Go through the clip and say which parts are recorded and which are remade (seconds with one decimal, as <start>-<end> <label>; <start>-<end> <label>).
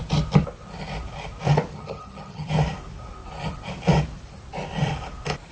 0.0-1.7 recorded; 1.7-2.5 remade; 2.5-5.5 recorded